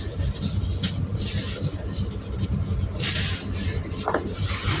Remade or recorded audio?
recorded